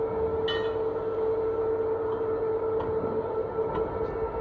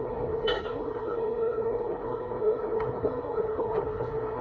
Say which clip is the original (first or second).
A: first